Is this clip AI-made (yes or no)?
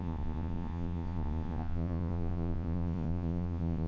yes